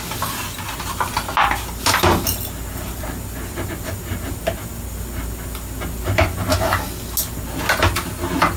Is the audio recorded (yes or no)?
yes